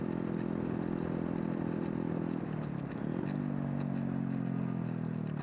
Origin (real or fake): real